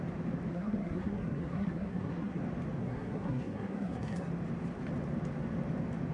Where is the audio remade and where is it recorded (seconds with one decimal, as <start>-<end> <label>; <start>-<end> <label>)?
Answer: 0.0-0.5 recorded; 0.5-2.4 remade; 2.4-2.8 recorded; 2.8-4.3 remade; 4.3-6.1 recorded